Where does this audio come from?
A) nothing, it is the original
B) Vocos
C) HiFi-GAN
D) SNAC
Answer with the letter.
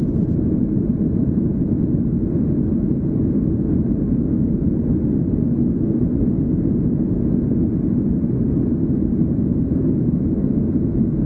A